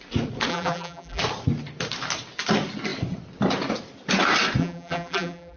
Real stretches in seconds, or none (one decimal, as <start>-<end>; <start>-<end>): 0.0-0.5; 1.2-4.6